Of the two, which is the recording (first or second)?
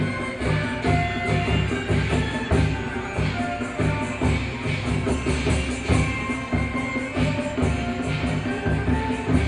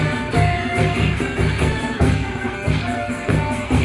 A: first